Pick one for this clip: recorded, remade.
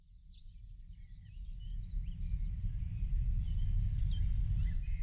recorded